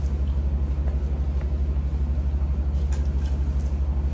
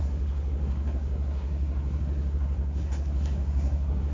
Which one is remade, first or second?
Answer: second